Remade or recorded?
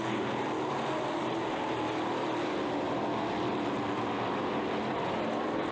recorded